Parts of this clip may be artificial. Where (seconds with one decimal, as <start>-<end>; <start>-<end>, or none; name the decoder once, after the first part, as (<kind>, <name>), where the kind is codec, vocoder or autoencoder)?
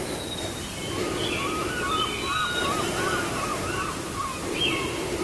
none